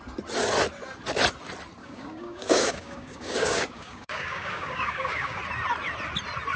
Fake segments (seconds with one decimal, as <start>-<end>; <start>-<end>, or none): 1.8-5.4